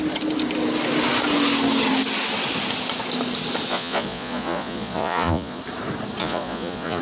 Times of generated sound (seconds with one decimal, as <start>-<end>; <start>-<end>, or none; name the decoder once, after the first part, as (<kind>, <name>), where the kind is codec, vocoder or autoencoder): 3.7-5.6 (vocoder, Vocos); 6.2-7.0